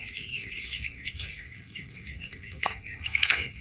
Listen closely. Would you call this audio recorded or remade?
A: remade